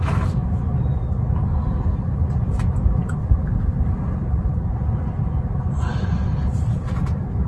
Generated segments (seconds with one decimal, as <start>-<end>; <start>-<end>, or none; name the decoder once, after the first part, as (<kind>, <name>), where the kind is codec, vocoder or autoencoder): none